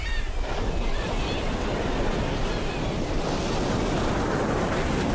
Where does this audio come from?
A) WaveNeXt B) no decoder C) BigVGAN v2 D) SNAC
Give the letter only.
B